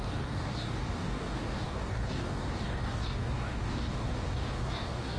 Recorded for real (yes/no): no